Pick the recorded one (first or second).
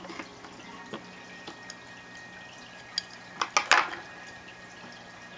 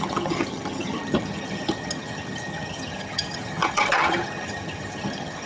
first